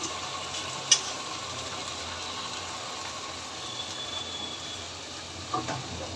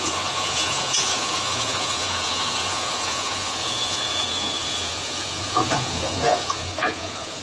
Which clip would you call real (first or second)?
first